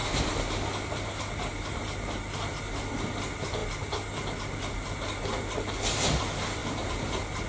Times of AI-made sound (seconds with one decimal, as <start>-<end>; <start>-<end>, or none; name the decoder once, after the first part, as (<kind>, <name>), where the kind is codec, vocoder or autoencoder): none